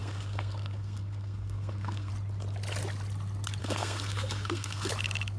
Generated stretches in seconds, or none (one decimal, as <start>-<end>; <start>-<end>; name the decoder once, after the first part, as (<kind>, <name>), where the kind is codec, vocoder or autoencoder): 0.0-2.1 (codec, SNAC); 3.6-4.9